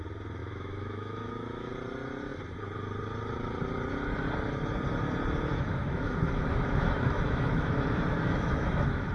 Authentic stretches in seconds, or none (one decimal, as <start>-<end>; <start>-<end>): 0.0-0.4; 1.7-5.5